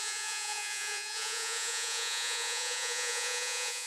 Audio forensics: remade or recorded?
remade